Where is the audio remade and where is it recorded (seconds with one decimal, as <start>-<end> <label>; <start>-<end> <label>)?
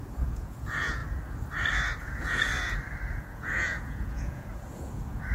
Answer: 0.0-1.0 remade; 1.0-2.0 recorded; 2.0-2.5 remade; 2.5-3.1 recorded; 3.1-5.3 remade